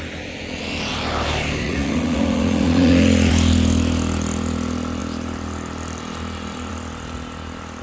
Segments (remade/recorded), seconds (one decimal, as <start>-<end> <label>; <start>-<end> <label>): 0.0-1.6 recorded; 1.6-3.3 remade; 3.3-7.8 recorded